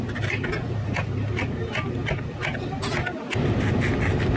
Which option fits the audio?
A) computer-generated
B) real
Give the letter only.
B